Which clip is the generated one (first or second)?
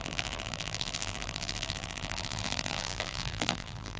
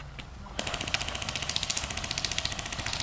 first